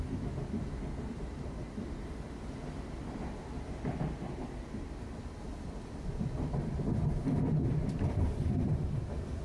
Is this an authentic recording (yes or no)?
no